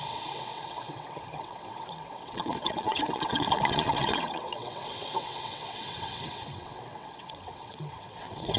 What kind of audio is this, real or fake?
fake